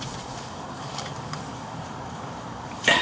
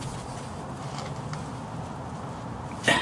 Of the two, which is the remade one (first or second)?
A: first